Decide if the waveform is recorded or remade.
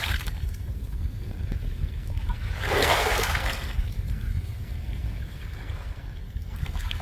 remade